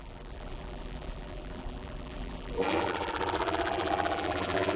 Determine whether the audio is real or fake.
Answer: fake